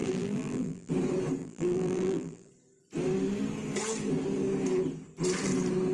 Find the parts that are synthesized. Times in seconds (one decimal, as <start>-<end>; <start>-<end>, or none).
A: 0.0-0.9; 1.4-2.5